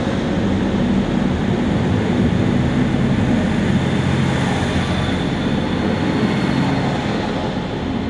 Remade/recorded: recorded